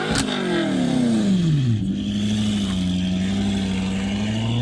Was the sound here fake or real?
real